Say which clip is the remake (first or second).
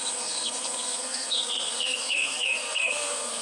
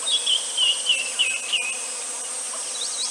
first